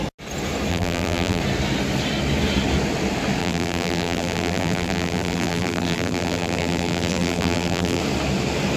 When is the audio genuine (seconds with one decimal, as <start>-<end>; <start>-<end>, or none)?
0.0-0.7; 1.4-3.4; 8.0-8.8